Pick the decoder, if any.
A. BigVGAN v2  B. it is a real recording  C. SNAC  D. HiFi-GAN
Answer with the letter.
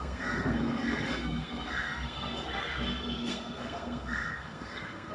C